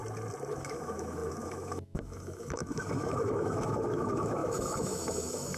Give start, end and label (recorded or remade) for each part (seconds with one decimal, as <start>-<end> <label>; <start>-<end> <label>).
0.0-0.5 recorded; 0.5-5.6 remade